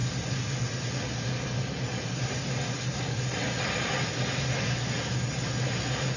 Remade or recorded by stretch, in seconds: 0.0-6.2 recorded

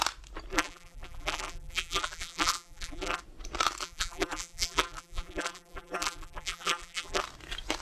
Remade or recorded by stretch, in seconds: 0.0-0.5 recorded; 0.5-3.2 remade; 3.2-3.8 recorded; 3.8-7.2 remade; 7.2-7.8 recorded

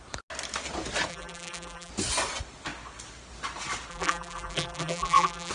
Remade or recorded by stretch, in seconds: 0.0-1.1 recorded; 1.1-1.9 remade; 1.9-3.9 recorded; 3.9-5.5 remade

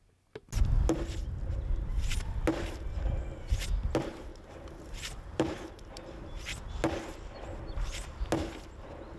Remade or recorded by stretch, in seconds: 0.0-4.3 recorded; 4.3-6.4 remade; 6.4-9.2 recorded